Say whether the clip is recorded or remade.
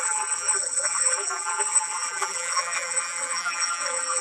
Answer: remade